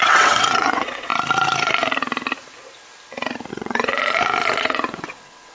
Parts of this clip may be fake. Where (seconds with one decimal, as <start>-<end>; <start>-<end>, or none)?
0.0-1.1; 3.5-3.9; 4.6-5.5